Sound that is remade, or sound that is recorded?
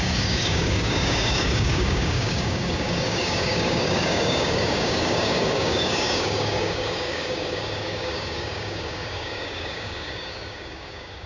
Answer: remade